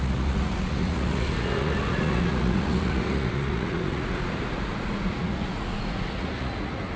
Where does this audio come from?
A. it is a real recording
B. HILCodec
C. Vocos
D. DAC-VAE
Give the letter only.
C